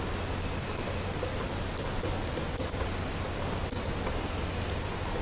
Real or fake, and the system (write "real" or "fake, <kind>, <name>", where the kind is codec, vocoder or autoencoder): real